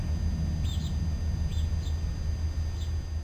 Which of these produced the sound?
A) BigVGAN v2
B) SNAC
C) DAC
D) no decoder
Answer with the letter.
D